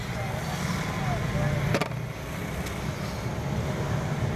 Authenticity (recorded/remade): recorded